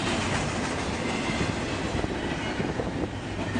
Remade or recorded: recorded